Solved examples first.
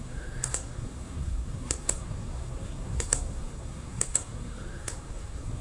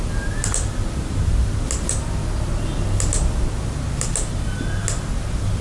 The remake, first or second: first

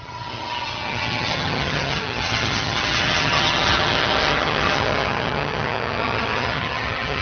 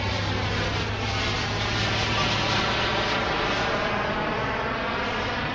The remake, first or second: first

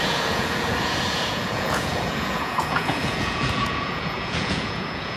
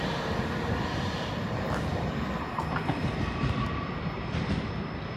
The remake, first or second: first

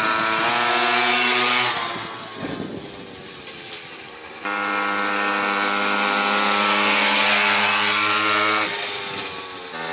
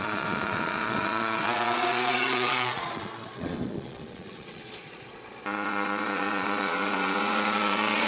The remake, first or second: second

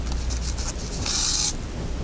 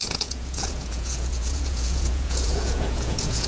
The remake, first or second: second